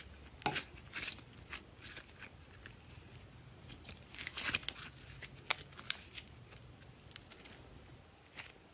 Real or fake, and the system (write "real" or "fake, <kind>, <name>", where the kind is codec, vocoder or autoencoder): real